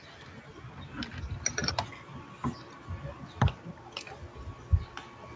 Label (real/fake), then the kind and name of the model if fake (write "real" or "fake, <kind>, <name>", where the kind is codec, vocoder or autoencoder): real